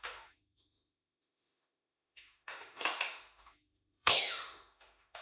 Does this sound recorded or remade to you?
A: remade